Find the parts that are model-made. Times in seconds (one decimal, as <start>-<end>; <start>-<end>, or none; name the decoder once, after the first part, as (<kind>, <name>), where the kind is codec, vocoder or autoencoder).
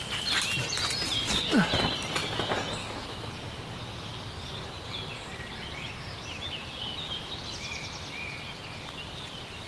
2.8-3.3 (autoencoder, DAC-VAE)